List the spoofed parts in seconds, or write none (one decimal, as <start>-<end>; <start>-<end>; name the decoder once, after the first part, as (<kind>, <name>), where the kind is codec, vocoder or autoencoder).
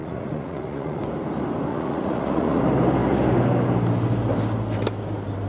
0.0-1.0 (vocoder, Vocos); 1.7-2.6